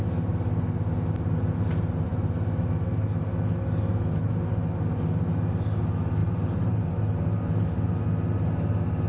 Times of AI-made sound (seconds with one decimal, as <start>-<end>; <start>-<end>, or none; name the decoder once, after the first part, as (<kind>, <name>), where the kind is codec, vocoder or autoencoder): 6.2-6.8 (vocoder, BigVGAN v2)